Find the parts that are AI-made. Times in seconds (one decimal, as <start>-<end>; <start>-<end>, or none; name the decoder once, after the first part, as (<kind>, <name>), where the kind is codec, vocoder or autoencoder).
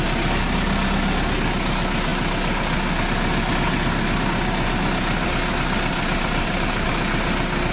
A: 5.9-6.9 (vocoder, BigVGAN v2)